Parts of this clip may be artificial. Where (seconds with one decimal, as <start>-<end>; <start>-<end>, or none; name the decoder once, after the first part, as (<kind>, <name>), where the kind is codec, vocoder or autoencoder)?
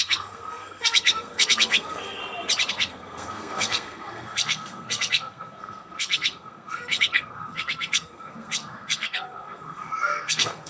0.0-2.2 (codec, SNAC); 2.7-10.7